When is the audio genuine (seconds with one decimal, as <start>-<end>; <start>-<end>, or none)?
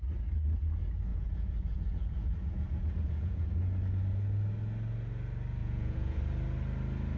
0.0-1.1; 3.5-5.6; 6.2-7.2